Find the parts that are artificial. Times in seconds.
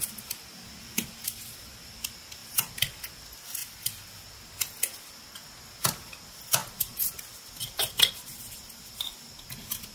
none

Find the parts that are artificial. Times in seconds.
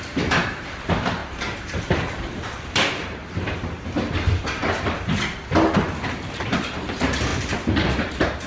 0.0-1.2; 2.3-4.6; 6.1-8.5